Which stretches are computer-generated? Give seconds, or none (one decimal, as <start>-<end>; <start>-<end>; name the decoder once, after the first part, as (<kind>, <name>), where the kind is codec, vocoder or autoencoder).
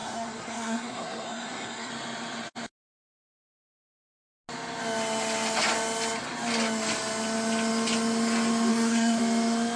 0.0-1.9 (codec, SNAC); 8.7-9.2